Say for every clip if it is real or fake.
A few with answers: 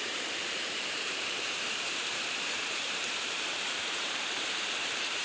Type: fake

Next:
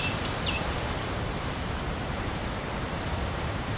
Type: fake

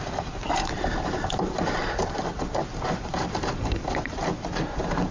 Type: fake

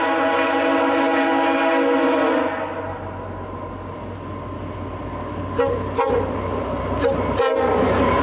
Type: real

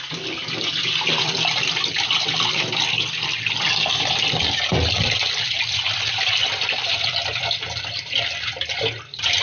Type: fake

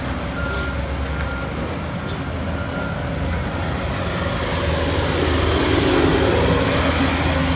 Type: real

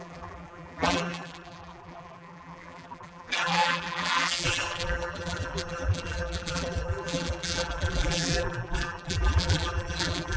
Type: fake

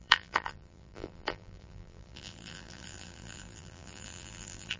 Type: fake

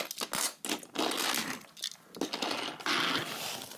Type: real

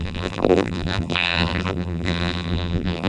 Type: fake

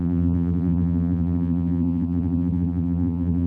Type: fake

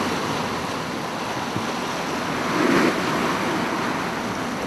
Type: real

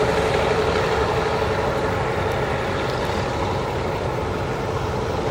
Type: real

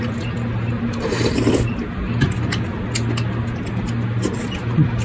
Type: real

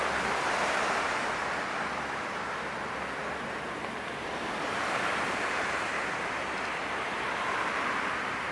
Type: fake